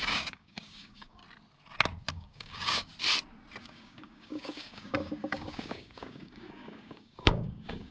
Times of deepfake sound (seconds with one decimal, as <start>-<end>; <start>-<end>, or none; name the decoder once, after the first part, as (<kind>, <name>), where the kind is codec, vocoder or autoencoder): 0.0-1.2 (codec, DAC); 2.1-2.9; 3.6-7.9